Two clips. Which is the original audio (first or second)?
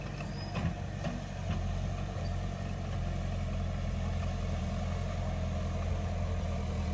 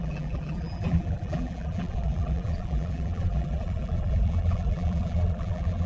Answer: first